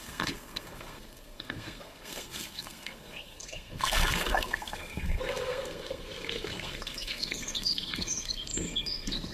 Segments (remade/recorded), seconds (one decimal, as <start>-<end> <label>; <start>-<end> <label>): 0.0-9.3 remade